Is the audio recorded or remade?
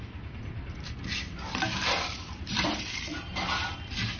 recorded